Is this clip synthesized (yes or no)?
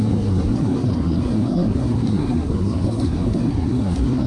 yes